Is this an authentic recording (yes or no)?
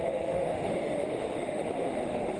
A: no